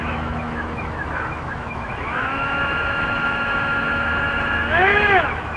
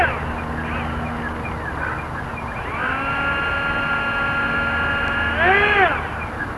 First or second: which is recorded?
second